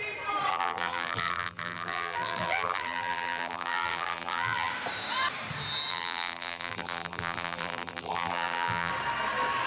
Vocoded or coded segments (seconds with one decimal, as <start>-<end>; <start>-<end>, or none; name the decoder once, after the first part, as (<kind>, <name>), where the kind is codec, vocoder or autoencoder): 0.5-4.7 (vocoder, BigVGAN v2); 5.9-8.9